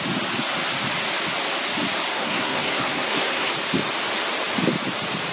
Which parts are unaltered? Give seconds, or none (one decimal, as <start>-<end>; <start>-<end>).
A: 0.0-2.1; 3.5-5.3